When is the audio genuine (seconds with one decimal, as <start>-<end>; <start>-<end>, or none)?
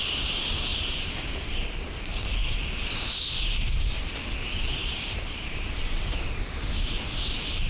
0.0-0.7; 2.3-4.8; 6.6-7.7